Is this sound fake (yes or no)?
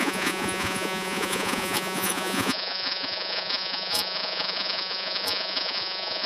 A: yes